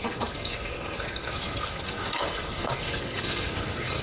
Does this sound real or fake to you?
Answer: fake